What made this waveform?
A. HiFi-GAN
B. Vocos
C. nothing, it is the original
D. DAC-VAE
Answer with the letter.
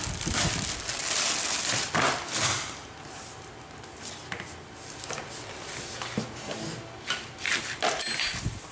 C